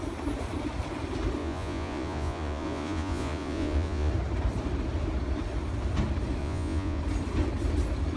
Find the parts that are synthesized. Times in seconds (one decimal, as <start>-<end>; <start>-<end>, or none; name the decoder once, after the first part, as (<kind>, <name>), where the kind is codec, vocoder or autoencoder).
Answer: 1.4-4.1 (vocoder, Vocos); 6.4-7.0